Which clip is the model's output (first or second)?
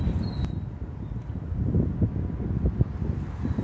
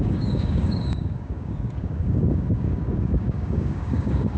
second